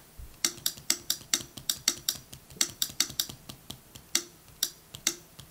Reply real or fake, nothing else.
fake